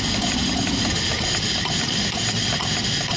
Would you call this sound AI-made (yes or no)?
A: no